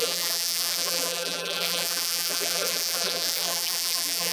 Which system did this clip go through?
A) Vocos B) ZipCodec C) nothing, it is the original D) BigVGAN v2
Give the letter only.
D